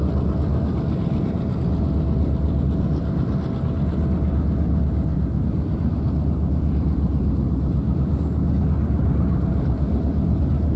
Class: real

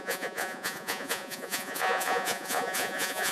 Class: fake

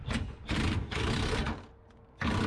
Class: real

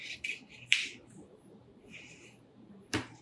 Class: fake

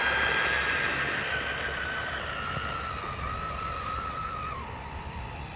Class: real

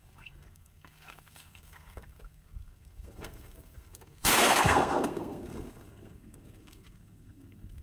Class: fake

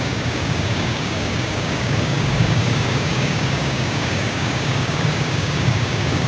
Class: fake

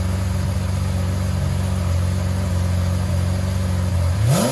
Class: real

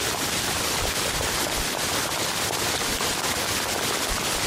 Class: real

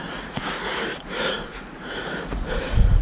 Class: fake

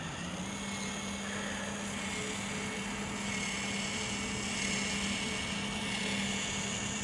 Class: real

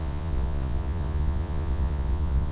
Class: fake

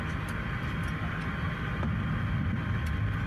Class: real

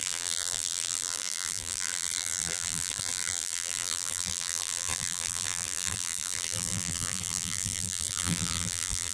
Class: fake